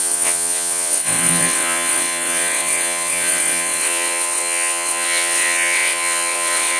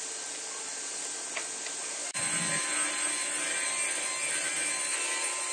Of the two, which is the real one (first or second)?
second